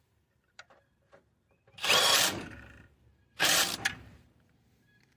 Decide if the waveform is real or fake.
fake